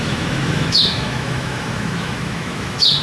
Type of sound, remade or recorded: remade